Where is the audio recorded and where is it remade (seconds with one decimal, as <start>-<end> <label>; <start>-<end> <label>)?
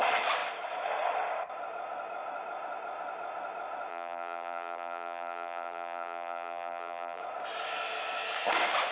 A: 0.0-3.9 recorded; 3.9-7.2 remade; 7.2-8.9 recorded